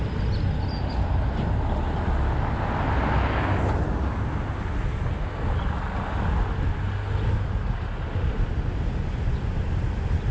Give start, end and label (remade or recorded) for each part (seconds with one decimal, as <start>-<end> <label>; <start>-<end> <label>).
0.0-9.0 recorded; 9.0-9.6 remade; 9.6-10.3 recorded